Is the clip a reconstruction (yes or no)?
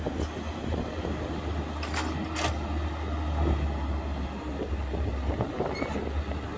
no